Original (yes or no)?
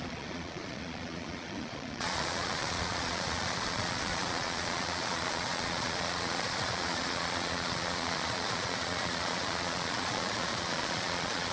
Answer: no